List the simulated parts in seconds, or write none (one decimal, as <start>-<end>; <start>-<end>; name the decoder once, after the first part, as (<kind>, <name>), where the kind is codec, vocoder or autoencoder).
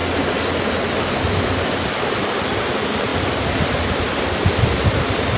none